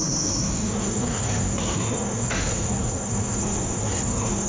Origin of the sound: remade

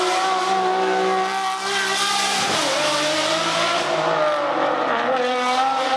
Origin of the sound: recorded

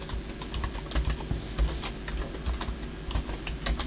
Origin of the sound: recorded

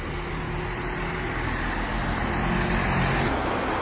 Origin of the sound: recorded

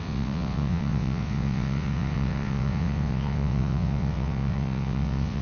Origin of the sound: remade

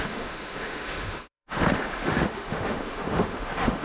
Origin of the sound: remade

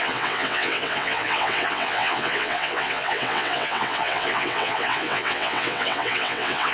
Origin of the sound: remade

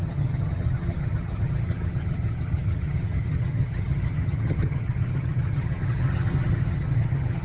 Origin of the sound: remade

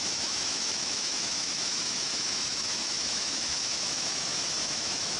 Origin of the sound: remade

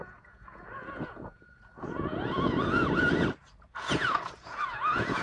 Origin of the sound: remade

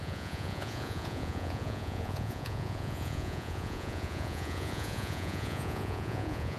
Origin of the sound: remade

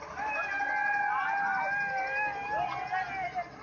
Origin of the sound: recorded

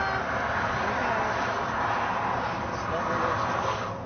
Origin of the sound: recorded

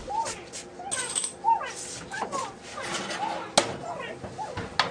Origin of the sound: recorded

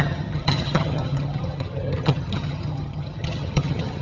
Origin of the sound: remade